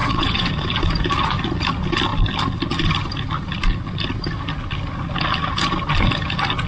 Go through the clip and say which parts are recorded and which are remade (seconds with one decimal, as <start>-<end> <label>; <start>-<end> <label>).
0.0-0.5 remade; 0.5-6.7 recorded